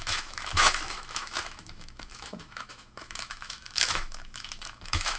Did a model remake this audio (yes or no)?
yes